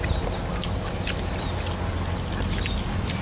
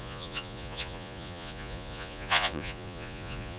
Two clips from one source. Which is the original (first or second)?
first